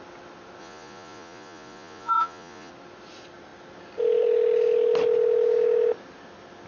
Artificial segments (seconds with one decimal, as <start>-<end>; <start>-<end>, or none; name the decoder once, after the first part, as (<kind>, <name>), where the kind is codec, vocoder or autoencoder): 0.6-2.7 (vocoder, Vocos)